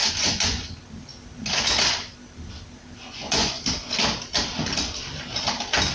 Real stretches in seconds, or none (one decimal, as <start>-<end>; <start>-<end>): 0.7-3.0; 3.6-5.9